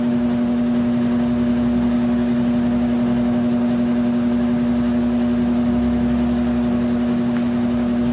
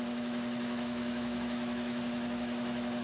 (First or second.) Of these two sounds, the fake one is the second